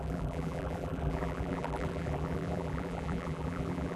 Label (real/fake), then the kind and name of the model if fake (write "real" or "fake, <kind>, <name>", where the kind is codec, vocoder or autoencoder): fake, vocoder, BigVGAN v2